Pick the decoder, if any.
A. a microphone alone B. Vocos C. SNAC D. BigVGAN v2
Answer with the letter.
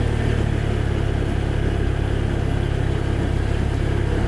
A